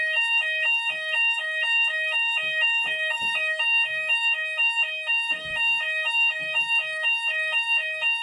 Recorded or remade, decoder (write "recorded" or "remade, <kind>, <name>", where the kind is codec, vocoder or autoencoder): remade, autoencoder, DAC-VAE